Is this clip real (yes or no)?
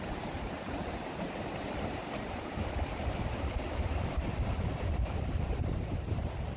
no